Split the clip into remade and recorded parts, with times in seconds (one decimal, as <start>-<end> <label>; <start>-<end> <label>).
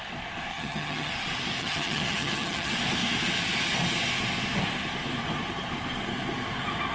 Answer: 0.0-0.5 recorded; 0.5-1.1 remade; 1.1-1.6 recorded; 1.6-2.7 remade; 2.7-6.9 recorded